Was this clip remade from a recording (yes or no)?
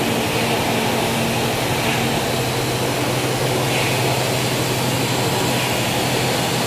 no